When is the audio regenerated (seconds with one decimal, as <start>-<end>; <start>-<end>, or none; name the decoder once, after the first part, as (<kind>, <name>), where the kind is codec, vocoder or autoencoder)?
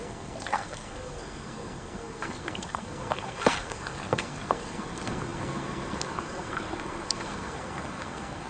0.0-8.5 (codec, SNAC)